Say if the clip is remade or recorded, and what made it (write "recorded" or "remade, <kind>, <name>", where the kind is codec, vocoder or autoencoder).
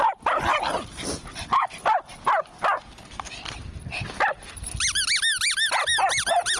recorded